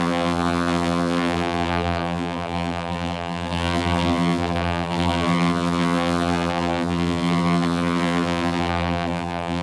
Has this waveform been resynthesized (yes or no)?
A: yes